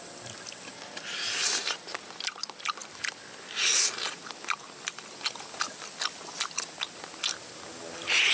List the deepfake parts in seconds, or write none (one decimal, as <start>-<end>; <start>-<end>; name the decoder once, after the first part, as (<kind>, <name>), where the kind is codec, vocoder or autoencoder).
none